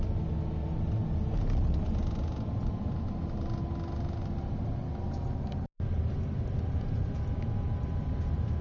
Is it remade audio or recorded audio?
recorded